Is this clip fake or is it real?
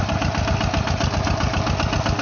real